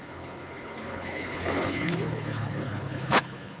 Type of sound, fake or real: fake